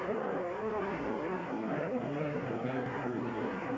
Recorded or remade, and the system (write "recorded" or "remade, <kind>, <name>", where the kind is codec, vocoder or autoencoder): remade, codec, SNAC